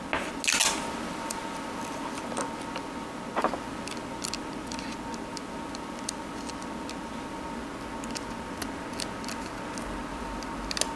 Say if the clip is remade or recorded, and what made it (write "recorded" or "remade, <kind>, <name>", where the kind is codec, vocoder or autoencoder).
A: recorded